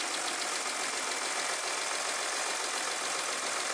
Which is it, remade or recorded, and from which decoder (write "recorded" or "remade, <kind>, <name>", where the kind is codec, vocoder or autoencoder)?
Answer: recorded